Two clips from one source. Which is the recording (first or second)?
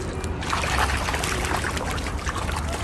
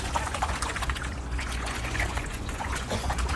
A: first